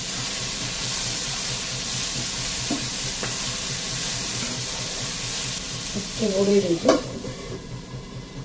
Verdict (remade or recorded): remade